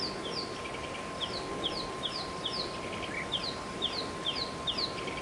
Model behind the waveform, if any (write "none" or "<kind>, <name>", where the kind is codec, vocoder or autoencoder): none